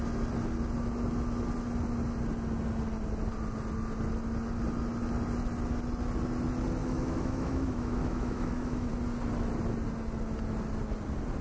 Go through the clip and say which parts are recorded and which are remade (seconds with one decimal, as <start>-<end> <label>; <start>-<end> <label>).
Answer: 0.0-6.8 recorded; 6.8-8.9 remade; 8.9-11.4 recorded